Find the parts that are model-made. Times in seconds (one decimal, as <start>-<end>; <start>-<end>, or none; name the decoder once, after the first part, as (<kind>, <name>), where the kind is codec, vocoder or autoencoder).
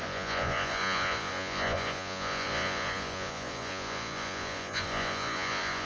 0.0-5.9 (vocoder, Vocos)